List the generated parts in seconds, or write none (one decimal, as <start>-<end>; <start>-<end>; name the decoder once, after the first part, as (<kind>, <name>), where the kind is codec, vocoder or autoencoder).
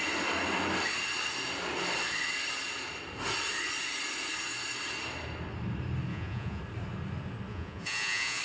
6.1-6.6 (vocoder, Vocos); 7.5-8.4